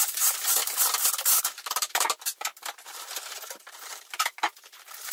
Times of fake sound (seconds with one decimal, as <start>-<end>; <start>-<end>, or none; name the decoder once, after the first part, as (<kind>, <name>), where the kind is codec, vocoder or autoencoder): 0.0-0.6 (vocoder, BigVGAN v2); 1.4-2.5; 3.4-5.1